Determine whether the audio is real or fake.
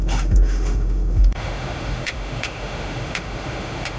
fake